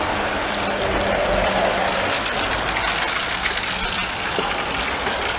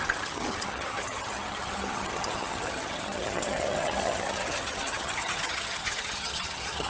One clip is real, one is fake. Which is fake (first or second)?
second